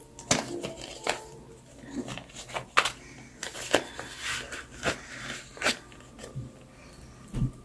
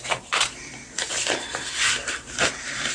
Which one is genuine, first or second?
first